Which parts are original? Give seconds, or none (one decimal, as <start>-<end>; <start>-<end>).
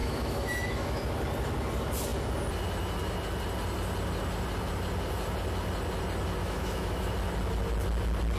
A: 1.0-6.4; 7.1-8.4